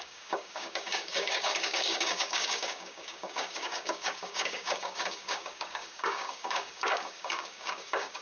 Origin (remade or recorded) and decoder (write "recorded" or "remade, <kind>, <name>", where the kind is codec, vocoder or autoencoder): remade, codec, DAC